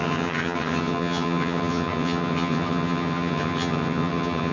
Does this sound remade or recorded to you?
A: remade